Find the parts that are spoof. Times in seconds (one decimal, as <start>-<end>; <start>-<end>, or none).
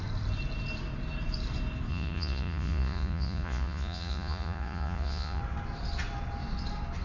1.9-5.4